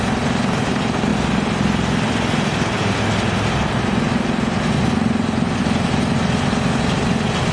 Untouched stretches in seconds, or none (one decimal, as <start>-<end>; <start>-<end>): 0.0-7.5